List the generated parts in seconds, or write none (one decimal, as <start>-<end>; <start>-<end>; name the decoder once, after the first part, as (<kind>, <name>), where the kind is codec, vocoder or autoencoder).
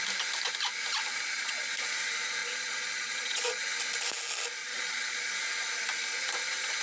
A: 1.1-1.7 (vocoder, Vocos); 2.4-3.6; 4.6-5.3